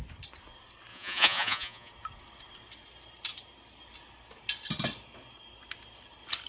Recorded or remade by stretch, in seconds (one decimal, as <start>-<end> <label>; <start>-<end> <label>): 0.0-0.9 recorded; 0.9-1.9 remade; 1.9-6.5 recorded